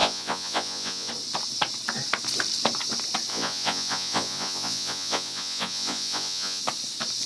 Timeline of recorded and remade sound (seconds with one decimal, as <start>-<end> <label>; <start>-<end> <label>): 0.0-1.1 remade; 1.1-3.3 recorded; 3.3-6.6 remade; 6.6-7.3 recorded